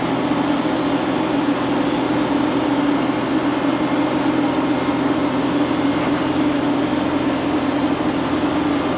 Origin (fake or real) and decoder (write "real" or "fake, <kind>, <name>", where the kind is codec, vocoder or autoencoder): real